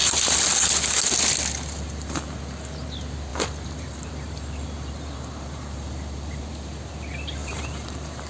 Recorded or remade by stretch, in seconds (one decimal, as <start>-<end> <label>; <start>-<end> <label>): 0.0-3.3 recorded; 3.3-6.5 remade; 6.5-7.4 recorded; 7.4-8.3 remade